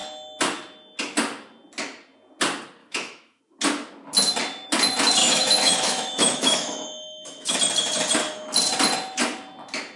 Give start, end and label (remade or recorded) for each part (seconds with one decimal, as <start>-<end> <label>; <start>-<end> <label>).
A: 0.0-2.8 recorded; 2.8-3.4 remade; 3.4-5.2 recorded; 5.2-7.6 remade; 7.6-10.0 recorded